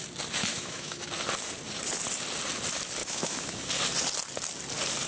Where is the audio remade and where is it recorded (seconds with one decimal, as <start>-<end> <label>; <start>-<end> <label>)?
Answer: 0.0-0.5 recorded; 0.5-1.1 remade; 1.1-3.0 recorded; 3.0-3.7 remade; 3.7-5.1 recorded